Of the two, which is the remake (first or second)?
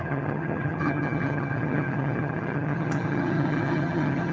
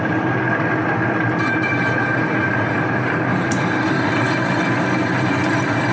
first